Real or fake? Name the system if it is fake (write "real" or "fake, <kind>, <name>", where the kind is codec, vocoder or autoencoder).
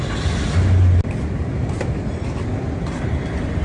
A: real